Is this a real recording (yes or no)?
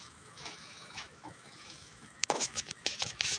no